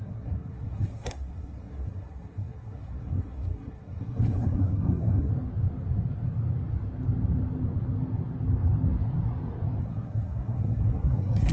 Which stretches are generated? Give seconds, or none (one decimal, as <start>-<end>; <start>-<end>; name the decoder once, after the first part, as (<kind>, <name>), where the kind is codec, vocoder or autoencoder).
0.0-5.3 (codec, SNAC); 9.8-11.5